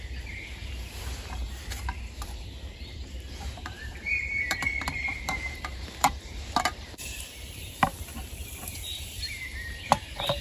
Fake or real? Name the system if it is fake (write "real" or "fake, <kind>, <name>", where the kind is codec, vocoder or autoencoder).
fake, vocoder, BigVGAN v2